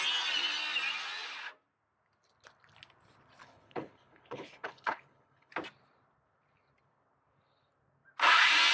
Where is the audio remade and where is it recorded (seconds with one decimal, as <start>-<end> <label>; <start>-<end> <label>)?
0.0-3.4 recorded; 3.4-5.5 remade; 5.5-8.7 recorded